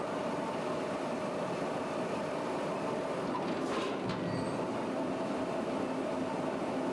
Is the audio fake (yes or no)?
no